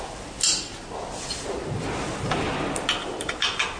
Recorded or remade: recorded